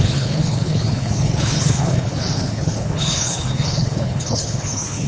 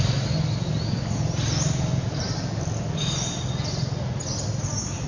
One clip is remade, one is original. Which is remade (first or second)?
first